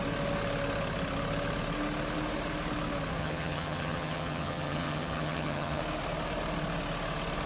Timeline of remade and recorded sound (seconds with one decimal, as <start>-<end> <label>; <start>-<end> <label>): 0.0-3.2 recorded; 3.2-5.8 remade; 5.8-7.5 recorded